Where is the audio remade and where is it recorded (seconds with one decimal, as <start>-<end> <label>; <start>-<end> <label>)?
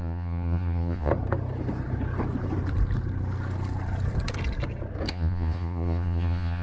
0.0-1.1 remade; 1.1-5.1 recorded; 5.1-6.6 remade